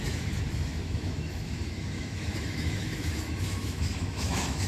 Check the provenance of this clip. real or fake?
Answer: fake